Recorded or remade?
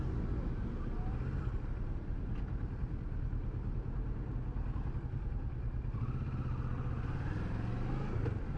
recorded